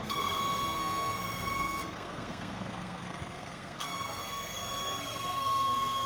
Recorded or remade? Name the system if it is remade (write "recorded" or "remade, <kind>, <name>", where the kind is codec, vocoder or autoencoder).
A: remade, codec, SNAC